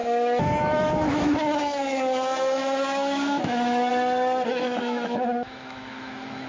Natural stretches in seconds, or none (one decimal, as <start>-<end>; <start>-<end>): 3.9-4.5